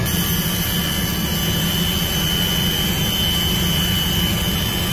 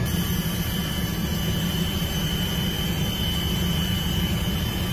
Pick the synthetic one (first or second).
second